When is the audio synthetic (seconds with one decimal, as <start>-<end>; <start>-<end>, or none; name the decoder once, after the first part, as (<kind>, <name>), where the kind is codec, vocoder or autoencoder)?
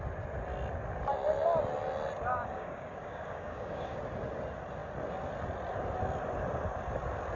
2.3-4.0 (codec, DAC)